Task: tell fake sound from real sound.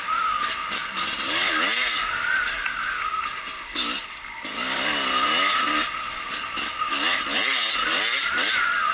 real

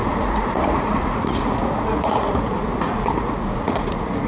fake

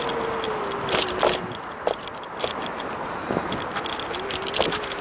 real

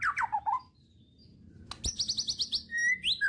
real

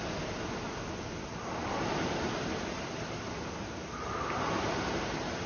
real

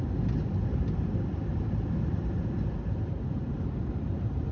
real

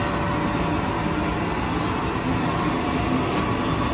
real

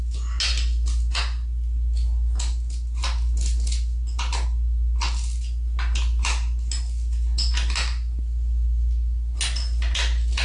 real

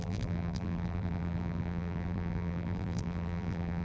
fake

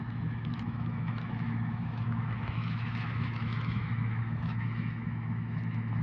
fake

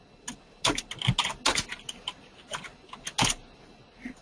real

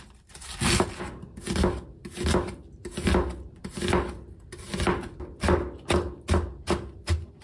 real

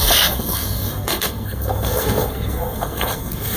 fake